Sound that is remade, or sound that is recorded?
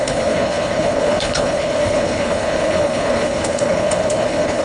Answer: remade